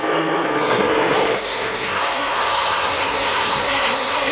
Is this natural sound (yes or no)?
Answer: no